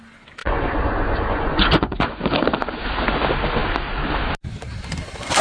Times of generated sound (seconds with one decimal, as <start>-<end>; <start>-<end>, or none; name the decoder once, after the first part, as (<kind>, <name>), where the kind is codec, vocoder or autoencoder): 0.4-2.2 (vocoder, Vocos)